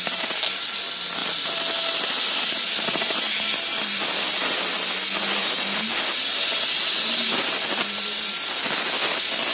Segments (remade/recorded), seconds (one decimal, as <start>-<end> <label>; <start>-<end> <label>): 0.0-9.5 recorded